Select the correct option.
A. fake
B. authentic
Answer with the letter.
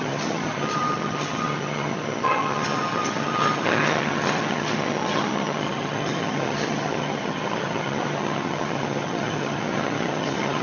A